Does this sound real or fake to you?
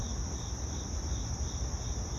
real